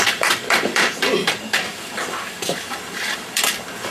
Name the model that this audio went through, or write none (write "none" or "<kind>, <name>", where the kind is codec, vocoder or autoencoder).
vocoder, BigVGAN v2